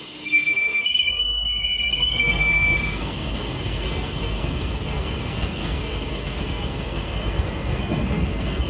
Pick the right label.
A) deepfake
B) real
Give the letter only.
A